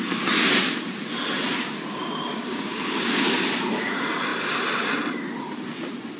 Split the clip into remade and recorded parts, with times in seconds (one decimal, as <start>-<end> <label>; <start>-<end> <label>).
0.0-2.3 recorded; 2.3-3.5 remade; 3.5-6.2 recorded